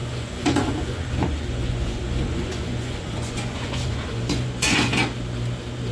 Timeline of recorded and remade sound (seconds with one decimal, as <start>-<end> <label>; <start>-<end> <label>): 0.0-5.0 remade; 5.0-5.9 recorded